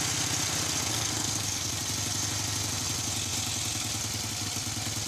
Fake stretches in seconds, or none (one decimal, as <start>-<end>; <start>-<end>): 0.9-1.7